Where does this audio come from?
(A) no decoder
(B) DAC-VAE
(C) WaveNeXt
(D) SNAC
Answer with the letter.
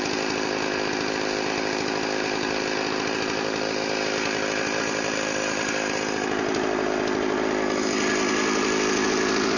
A